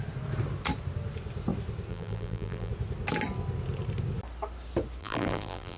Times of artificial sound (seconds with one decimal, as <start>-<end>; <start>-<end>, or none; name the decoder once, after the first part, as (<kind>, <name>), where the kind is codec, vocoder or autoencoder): 1.9-2.7 (vocoder, BigVGAN v2); 5.0-5.8